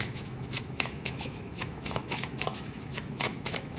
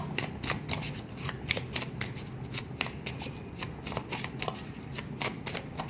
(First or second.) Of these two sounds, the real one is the second